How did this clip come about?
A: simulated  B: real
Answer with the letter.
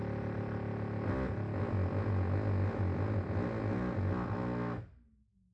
B